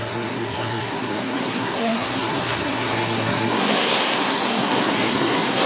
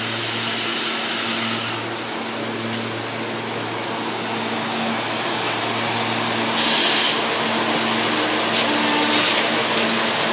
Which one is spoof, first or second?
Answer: first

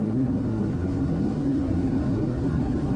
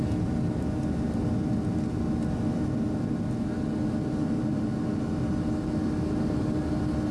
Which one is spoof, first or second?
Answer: first